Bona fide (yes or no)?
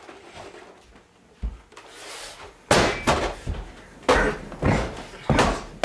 yes